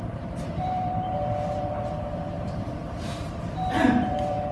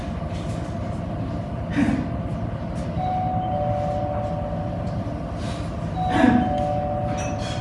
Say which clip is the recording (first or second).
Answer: second